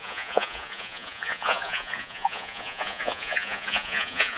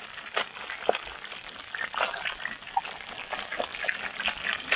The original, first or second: second